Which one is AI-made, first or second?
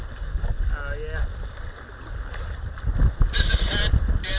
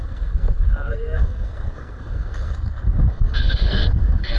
second